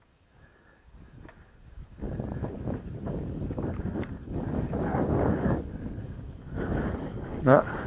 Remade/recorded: remade